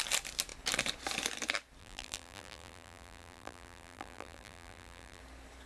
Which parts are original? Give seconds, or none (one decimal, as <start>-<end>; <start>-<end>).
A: 0.0-1.8; 5.2-5.7